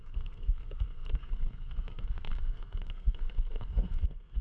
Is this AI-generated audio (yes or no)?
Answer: yes